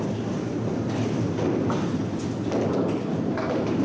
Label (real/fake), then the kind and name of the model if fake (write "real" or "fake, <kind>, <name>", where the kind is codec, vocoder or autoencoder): real